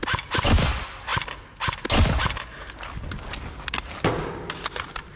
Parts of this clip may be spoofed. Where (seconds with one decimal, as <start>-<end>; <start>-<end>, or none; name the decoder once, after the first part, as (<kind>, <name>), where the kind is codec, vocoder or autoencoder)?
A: none